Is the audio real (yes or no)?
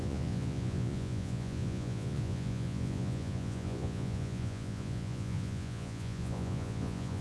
no